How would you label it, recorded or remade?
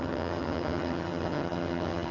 remade